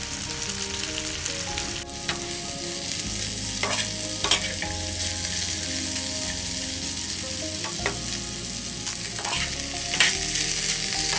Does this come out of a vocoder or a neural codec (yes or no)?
no